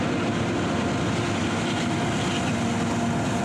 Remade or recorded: recorded